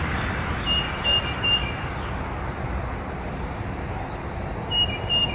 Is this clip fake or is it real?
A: real